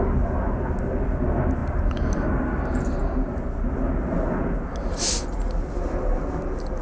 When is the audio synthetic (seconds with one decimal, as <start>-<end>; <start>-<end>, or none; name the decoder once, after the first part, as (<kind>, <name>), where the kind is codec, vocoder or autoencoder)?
none

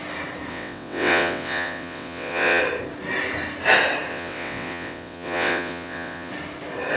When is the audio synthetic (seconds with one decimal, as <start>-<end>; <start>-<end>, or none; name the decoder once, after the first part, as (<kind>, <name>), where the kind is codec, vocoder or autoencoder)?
0.5-2.6 (vocoder, WaveNeXt); 4.1-6.3